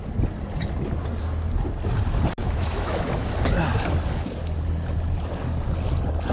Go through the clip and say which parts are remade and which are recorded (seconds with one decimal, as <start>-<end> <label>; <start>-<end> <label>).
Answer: 0.0-2.4 recorded; 2.4-3.3 remade; 3.3-6.3 recorded